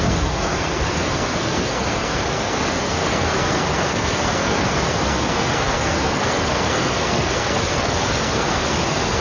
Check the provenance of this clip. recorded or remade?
remade